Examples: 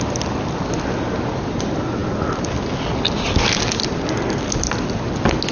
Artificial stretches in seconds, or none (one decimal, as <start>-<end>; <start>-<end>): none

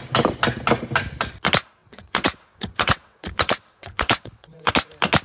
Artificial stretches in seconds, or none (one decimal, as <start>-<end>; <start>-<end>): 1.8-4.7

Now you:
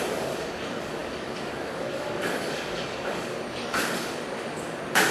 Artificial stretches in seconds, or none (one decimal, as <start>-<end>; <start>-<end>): 0.0-5.1

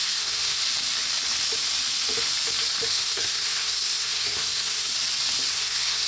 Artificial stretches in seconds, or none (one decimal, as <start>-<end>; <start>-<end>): 0.0-0.6; 2.9-4.9; 5.5-6.1

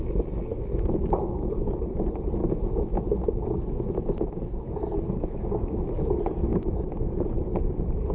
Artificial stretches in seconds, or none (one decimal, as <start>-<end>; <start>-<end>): 0.5-1.1; 2.4-5.8; 6.5-7.1

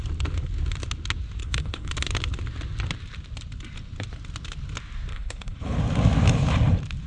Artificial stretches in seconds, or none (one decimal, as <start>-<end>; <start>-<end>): 1.4-1.9; 5.1-5.8

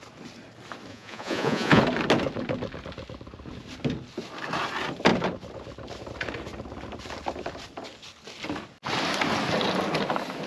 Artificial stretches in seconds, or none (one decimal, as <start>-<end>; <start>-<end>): 0.9-1.8

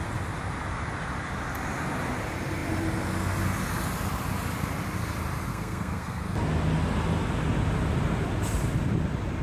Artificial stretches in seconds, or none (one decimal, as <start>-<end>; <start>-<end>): 5.5-6.2